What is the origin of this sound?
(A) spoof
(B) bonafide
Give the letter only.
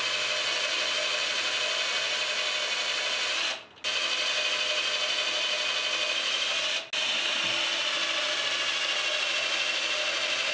B